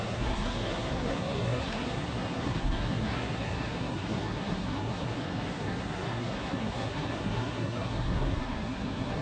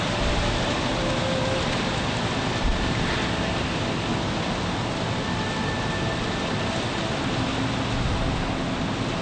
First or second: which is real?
second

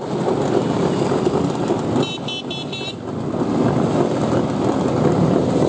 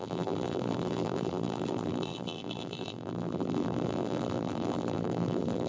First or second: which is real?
first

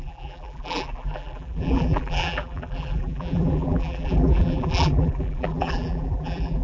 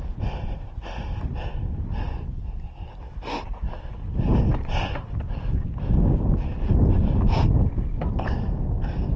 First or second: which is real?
second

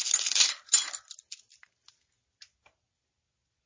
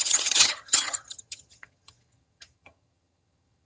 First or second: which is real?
first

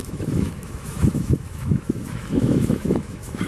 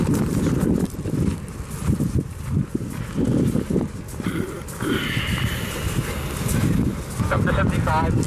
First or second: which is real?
second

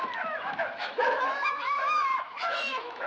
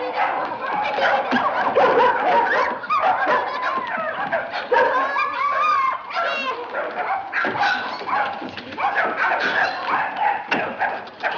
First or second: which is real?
second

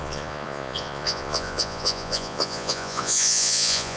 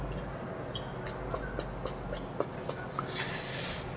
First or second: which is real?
second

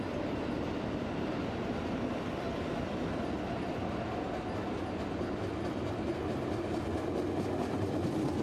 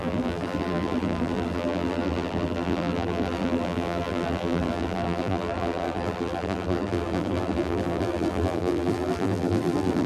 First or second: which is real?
first